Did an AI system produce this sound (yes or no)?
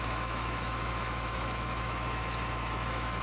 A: yes